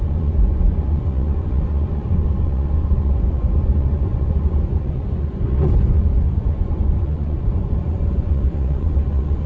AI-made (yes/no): yes